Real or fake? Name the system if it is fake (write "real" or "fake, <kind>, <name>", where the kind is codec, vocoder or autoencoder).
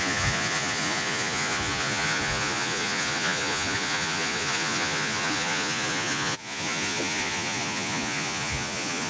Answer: fake, vocoder, Vocos